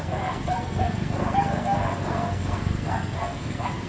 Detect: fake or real fake